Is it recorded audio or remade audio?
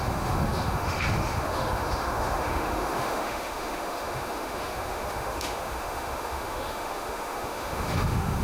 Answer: remade